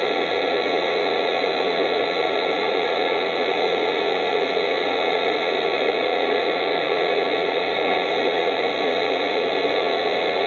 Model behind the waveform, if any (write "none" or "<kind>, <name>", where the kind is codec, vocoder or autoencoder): vocoder, Vocos